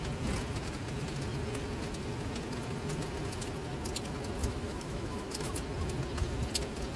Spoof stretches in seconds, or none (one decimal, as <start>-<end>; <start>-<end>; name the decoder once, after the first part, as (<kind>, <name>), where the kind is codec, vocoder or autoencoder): 4.4-5.5 (autoencoder, DAC-VAE)

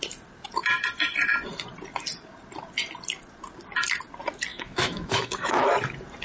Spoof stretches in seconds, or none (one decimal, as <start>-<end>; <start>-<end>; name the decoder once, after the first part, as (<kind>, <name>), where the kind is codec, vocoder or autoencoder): 4.5-5.7 (autoencoder, DAC-VAE)